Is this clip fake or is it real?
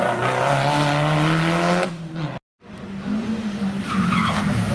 real